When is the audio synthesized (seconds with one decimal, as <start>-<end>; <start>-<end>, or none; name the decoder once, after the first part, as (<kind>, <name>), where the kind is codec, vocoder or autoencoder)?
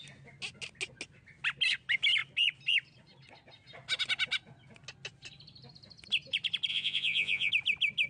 6.7-7.5 (vocoder, Vocos)